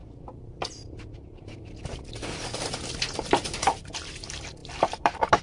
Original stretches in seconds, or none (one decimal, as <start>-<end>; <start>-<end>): none